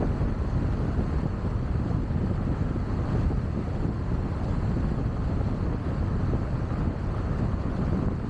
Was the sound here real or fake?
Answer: real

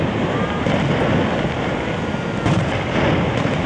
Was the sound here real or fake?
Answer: real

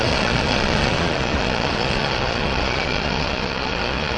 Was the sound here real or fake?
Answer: fake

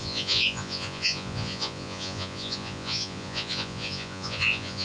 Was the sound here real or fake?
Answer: fake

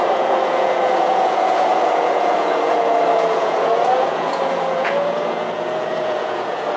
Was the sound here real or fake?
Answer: fake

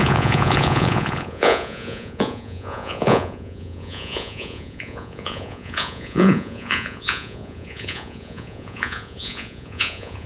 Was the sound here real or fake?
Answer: fake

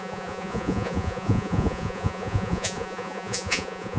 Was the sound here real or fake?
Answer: fake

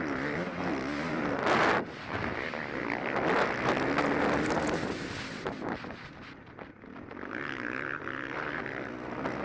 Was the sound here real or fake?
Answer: real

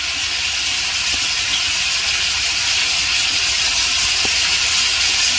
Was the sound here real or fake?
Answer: real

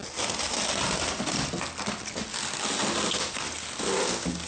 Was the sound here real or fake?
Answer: real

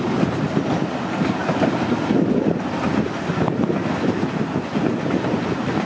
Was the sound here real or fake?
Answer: real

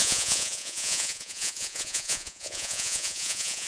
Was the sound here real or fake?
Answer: fake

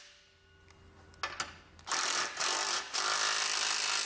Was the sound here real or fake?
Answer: real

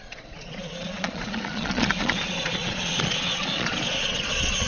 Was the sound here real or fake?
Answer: fake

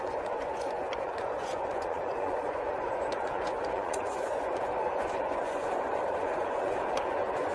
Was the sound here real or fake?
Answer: fake